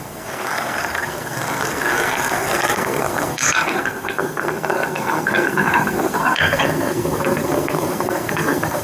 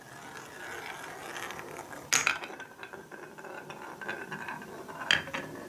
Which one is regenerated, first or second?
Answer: first